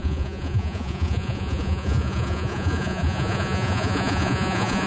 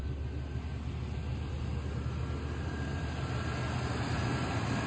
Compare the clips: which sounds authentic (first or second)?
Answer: second